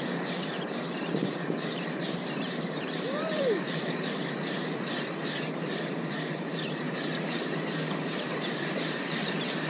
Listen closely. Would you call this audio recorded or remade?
remade